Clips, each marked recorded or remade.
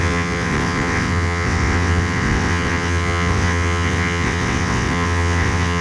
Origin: remade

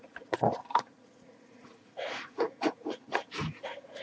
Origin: remade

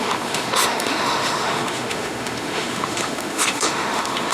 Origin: remade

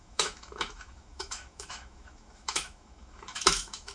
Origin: remade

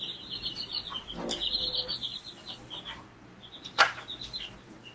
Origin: remade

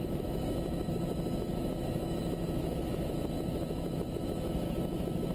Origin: remade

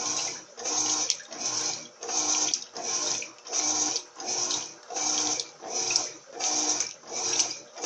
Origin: recorded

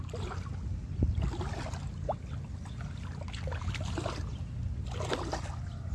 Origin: recorded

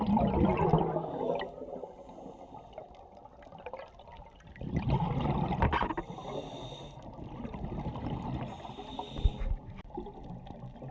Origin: recorded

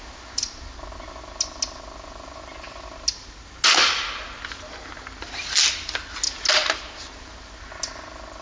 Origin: recorded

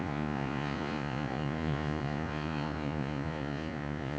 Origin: remade